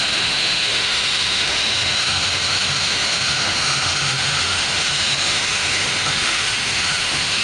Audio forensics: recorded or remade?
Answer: remade